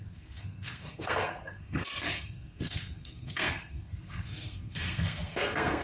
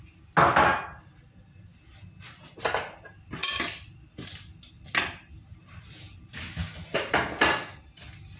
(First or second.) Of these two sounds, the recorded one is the second